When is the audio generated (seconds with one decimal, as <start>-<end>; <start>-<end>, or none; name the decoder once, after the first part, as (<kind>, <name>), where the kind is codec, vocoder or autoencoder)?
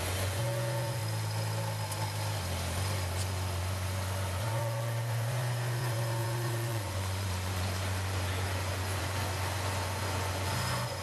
0.0-1.0 (vocoder, Vocos); 4.4-11.0